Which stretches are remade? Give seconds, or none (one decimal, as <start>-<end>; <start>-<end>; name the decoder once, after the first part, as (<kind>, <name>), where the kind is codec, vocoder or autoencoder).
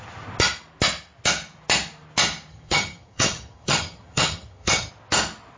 2.5-4.9 (vocoder, HiFi-GAN)